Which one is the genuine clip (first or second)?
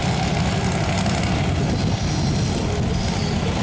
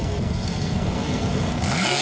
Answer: first